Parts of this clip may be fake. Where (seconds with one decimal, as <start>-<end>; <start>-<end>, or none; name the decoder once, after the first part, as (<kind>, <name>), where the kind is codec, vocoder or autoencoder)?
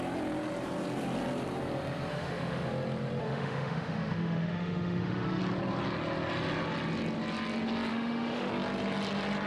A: 2.1-2.7 (autoencoder, DAC-VAE); 3.2-5.4; 7.9-8.5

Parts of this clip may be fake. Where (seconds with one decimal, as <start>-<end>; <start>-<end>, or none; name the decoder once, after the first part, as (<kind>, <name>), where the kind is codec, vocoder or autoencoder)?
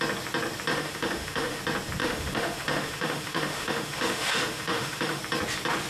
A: 0.7-1.6 (autoencoder, DAC-VAE); 2.0-5.2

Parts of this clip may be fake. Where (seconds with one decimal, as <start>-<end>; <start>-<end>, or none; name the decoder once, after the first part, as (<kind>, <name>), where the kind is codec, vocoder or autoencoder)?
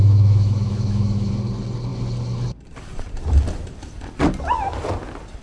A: 0.0-1.3 (autoencoder, DAC-VAE)